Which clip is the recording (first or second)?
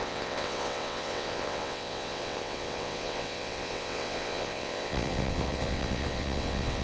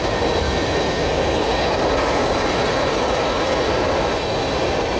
second